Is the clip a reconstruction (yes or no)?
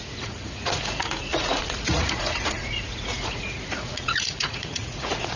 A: yes